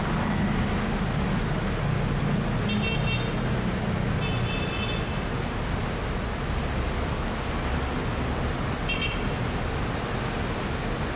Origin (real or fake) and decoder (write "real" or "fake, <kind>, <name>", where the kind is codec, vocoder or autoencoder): real